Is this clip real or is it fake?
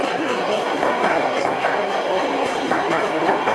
fake